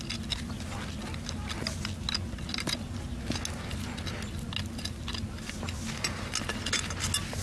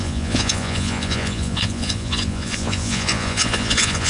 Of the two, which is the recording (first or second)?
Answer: first